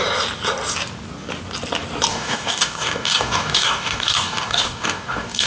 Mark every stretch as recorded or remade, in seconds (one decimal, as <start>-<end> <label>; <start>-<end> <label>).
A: 0.0-2.1 recorded; 2.1-5.5 remade